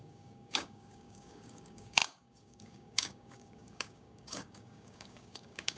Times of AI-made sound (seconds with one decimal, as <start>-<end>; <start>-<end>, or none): 0.0-5.8